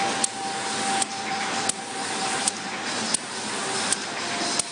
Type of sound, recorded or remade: recorded